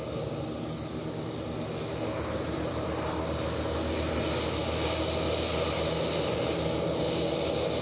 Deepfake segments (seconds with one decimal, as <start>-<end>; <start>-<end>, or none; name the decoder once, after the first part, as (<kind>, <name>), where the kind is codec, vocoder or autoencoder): none